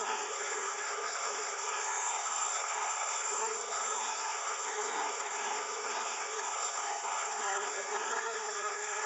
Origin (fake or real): fake